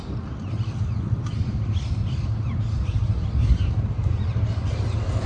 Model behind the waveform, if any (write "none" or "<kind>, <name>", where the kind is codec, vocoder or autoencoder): none